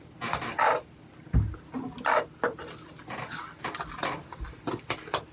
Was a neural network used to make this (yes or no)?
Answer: no